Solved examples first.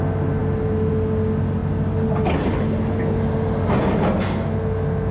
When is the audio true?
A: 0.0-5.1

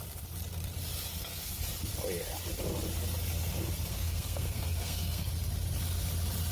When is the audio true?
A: 0.0-1.1; 1.6-3.9; 5.3-6.5

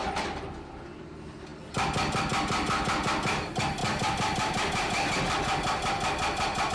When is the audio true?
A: 0.0-6.7

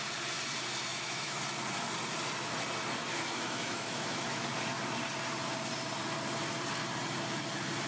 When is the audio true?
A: 0.0-0.9; 1.4-3.0; 4.5-7.9